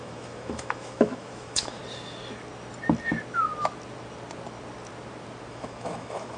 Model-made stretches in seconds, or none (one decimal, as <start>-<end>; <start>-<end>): 0.0-1.8; 5.5-6.4